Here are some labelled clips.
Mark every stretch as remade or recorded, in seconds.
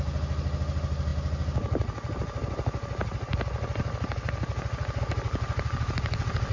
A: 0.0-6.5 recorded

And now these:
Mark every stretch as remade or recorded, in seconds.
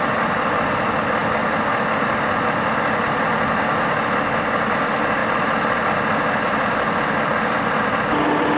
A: 0.0-8.6 recorded